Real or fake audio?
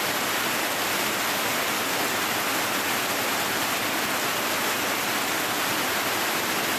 real